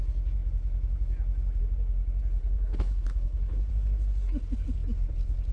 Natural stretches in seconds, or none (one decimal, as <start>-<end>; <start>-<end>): 0.0-2.4; 3.7-5.5